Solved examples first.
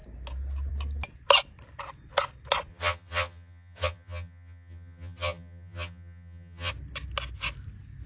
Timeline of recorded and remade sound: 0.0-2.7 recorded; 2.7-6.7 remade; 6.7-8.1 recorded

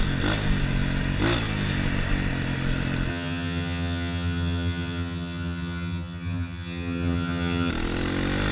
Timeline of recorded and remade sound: 0.0-3.1 recorded; 3.1-7.7 remade; 7.7-8.5 recorded

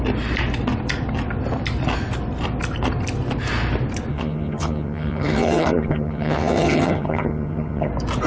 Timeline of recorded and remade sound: 0.0-4.1 recorded; 4.1-7.9 remade; 7.9-8.3 recorded

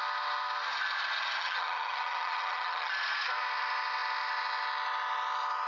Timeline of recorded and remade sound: 0.0-1.4 recorded; 1.4-2.9 remade; 2.9-5.7 recorded

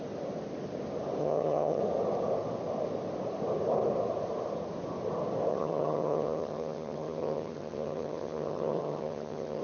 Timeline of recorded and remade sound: 0.0-1.2 recorded; 1.2-1.8 remade; 1.8-5.5 recorded; 5.5-9.6 remade

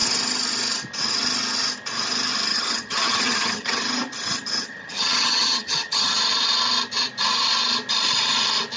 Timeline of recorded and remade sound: 0.0-2.5 recorded; 2.5-3.8 remade; 3.8-4.6 recorded; 4.6-6.2 remade; 6.2-8.8 recorded